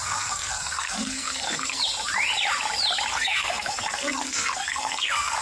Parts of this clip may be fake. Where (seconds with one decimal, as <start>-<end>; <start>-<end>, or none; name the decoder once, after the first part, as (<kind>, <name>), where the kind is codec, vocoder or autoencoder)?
0.0-1.8 (codec, SNAC); 3.1-5.4